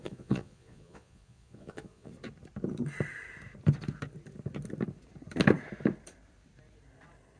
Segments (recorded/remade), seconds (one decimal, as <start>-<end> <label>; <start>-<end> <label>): 0.0-2.1 remade; 2.1-7.4 recorded

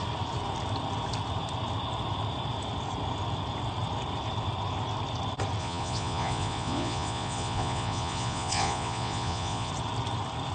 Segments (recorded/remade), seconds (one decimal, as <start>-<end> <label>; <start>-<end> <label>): 0.0-5.6 recorded; 5.6-9.7 remade; 9.7-10.5 recorded

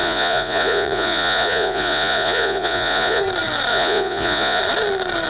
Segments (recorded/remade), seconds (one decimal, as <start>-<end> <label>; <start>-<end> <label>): 0.0-3.2 remade; 3.2-3.7 recorded; 3.7-4.6 remade; 4.6-5.3 recorded

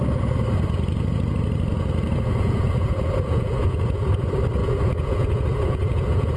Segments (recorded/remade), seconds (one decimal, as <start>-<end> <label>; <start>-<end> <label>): 0.0-1.7 recorded; 1.7-4.1 remade; 4.1-4.6 recorded; 4.6-6.4 remade

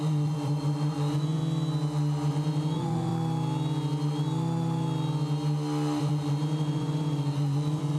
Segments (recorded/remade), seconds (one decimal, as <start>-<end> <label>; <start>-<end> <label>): 0.0-1.4 remade; 1.4-2.3 recorded; 2.3-3.1 remade; 3.1-6.0 recorded; 6.0-8.0 remade

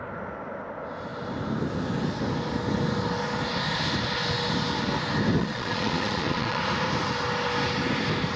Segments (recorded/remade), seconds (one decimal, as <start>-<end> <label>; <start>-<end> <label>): 0.0-5.4 recorded; 5.4-6.6 remade; 6.6-8.4 recorded

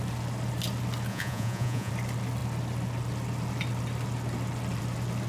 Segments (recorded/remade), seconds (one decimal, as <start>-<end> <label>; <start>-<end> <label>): 0.0-1.1 recorded; 1.1-1.9 remade; 1.9-5.3 recorded

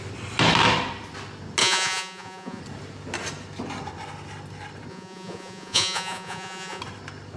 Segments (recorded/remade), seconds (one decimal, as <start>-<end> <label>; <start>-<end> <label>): 0.0-1.6 recorded; 1.6-2.6 remade; 2.6-4.9 recorded; 4.9-6.8 remade; 6.8-7.4 recorded